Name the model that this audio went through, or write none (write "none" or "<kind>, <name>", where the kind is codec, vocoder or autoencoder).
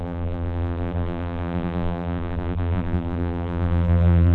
vocoder, BigVGAN v2